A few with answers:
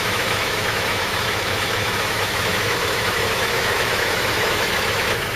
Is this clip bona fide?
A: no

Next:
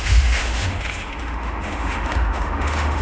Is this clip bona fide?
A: no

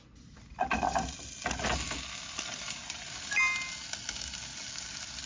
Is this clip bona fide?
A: yes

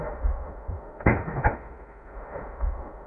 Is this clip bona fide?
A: no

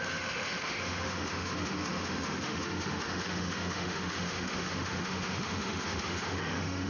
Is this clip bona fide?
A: no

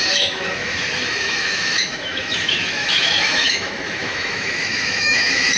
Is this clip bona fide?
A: no